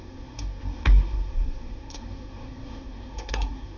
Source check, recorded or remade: remade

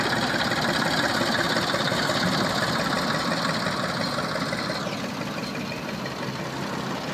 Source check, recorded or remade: recorded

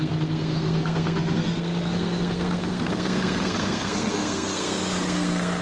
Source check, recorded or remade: remade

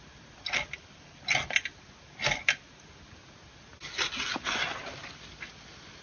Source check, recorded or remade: recorded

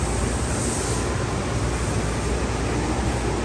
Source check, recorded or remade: recorded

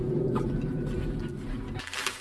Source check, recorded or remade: recorded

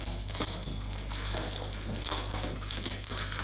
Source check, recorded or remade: remade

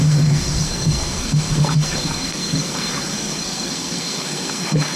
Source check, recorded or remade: remade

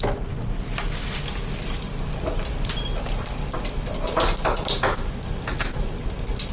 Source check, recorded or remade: recorded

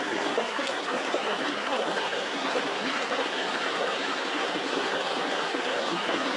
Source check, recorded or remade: remade